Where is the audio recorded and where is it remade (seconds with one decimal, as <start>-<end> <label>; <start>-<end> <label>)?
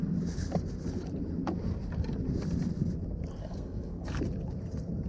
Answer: 0.0-3.4 recorded; 3.4-4.2 remade; 4.2-5.1 recorded